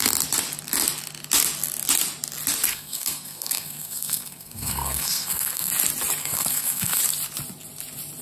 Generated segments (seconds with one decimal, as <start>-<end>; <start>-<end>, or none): 2.7-5.7; 6.2-7.0